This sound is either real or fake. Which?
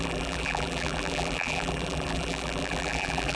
fake